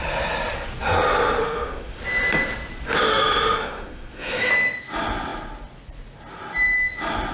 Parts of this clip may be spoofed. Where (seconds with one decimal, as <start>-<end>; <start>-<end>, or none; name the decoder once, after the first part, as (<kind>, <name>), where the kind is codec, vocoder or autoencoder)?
1.4-2.0 (autoencoder, DAC-VAE); 3.1-4.5